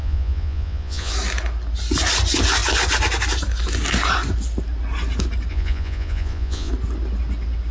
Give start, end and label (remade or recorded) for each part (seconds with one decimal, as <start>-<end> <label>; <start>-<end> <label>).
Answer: 0.0-1.1 remade; 1.1-5.5 recorded; 5.5-6.7 remade; 6.7-7.7 recorded